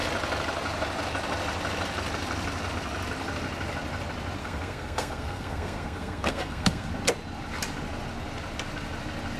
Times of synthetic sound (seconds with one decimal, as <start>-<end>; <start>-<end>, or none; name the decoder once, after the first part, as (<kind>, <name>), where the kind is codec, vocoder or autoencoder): 4.4-6.9 (codec, SNAC)